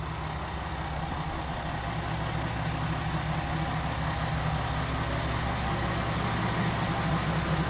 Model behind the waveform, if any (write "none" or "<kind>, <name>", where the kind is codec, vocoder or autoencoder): none